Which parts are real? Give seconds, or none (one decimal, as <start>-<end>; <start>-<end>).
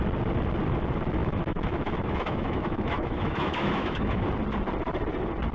0.0-1.2; 4.3-5.5